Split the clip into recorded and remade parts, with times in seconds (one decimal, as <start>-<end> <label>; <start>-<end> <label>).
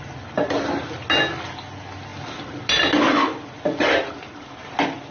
0.0-5.1 recorded